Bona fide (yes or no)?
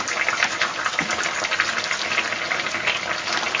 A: yes